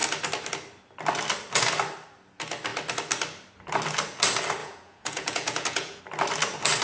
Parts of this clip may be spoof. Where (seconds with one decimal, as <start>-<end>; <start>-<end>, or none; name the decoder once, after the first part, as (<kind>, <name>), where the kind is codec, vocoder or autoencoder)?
4.6-6.0 (vocoder, Vocos)